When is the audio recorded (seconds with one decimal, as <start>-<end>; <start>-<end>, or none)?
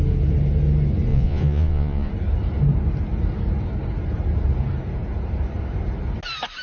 0.0-1.1; 2.1-6.6